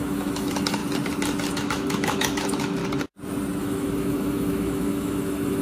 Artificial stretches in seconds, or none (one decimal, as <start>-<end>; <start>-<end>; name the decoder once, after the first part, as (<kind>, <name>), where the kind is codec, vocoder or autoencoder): 0.0-0.8 (autoencoder, DAC-VAE); 1.5-2.8; 3.6-5.6